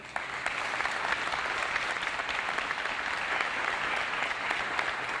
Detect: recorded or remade recorded